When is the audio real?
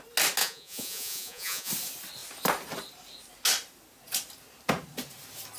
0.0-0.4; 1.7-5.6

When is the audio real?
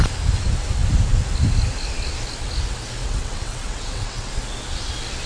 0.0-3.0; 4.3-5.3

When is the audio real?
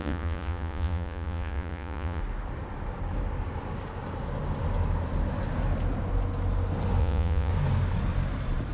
2.2-7.0; 7.5-8.7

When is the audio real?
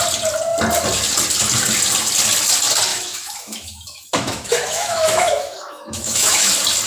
0.0-2.9; 6.5-6.9